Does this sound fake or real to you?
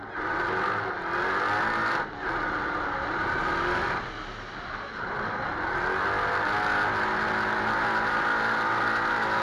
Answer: real